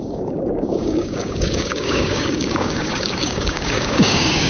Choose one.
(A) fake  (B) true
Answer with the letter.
A